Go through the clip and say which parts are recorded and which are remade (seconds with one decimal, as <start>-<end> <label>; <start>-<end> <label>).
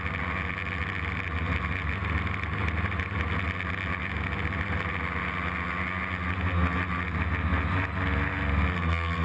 0.0-9.2 recorded